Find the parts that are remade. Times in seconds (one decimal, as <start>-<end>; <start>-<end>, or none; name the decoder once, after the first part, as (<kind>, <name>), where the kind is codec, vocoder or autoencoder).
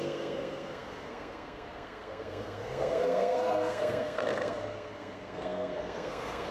0.0-6.5 (codec, SNAC)